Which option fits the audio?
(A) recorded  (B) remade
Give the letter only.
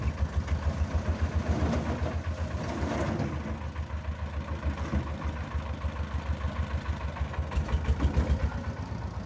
A